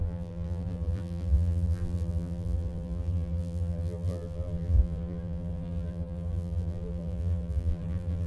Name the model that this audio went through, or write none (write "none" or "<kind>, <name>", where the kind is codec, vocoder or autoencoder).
vocoder, BigVGAN v2